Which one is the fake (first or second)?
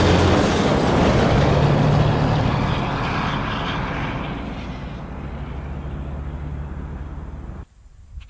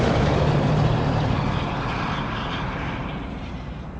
second